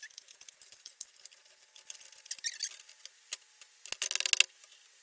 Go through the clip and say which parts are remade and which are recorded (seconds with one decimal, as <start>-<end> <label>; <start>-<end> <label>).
0.0-5.0 recorded